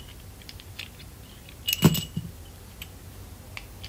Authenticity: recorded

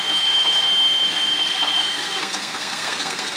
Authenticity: remade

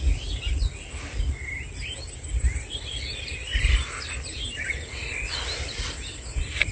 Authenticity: recorded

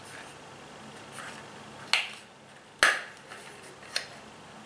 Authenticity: recorded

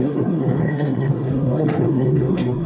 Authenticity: remade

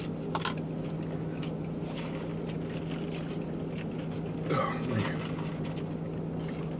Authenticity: recorded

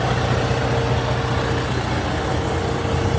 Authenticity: recorded